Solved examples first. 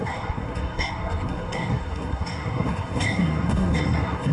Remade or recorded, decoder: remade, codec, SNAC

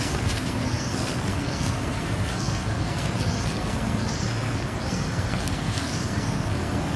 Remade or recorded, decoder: remade, codec, SNAC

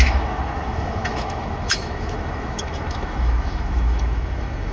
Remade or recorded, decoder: remade, autoencoder, DAC-VAE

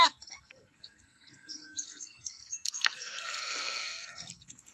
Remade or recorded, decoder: remade, codec, SNAC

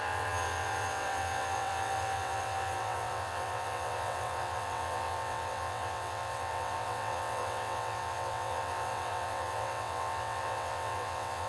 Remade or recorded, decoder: remade, vocoder, WaveNeXt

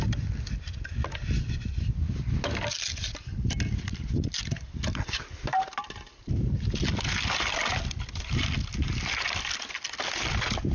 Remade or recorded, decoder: recorded